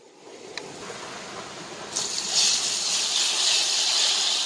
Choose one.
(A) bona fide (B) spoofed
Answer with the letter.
A